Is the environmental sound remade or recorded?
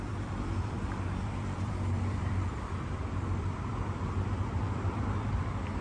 remade